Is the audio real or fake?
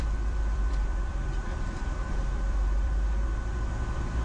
fake